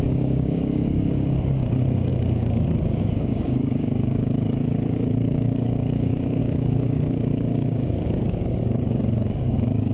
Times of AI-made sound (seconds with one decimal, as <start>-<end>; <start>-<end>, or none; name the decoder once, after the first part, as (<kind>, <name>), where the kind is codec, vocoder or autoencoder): 0.0-9.9 (codec, DAC)